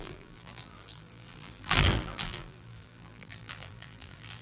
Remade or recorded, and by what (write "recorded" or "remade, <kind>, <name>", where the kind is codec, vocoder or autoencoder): remade, vocoder, BigVGAN v2